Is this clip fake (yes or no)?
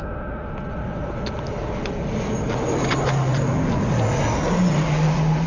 no